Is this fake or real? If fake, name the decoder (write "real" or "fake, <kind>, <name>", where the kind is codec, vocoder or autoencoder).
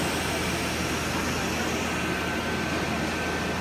real